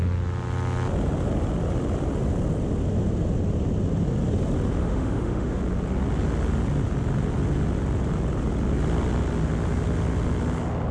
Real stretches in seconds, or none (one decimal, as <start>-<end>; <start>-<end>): 0.0-4.8; 5.6-10.9